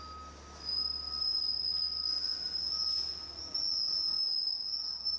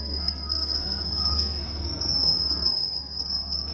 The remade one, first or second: second